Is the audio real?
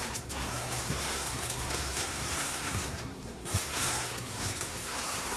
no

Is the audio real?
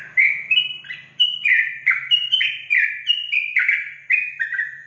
yes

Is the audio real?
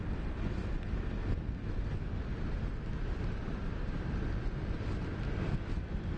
yes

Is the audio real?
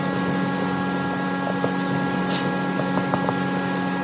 yes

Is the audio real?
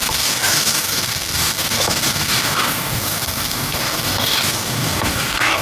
no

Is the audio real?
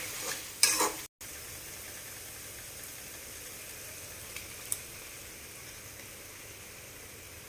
yes